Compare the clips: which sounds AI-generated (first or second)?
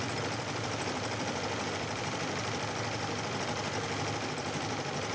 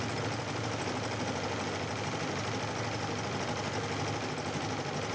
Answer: first